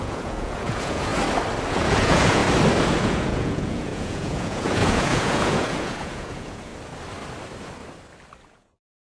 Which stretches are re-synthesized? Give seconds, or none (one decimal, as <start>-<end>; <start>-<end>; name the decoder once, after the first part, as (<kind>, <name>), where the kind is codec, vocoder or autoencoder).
0.0-1.1 (vocoder, Vocos); 1.7-2.4; 3.0-6.7; 8.5-9.1